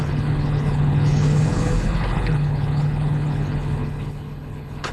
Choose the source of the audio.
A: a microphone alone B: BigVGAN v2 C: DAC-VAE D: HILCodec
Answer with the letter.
D